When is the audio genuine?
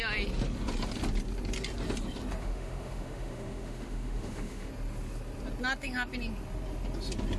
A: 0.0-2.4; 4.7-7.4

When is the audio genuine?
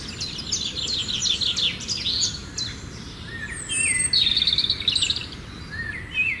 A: 0.0-6.4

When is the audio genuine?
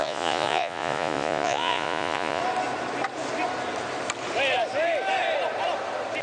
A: 2.4-6.2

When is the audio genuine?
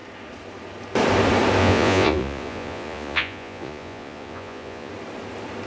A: 0.0-1.6; 4.9-5.7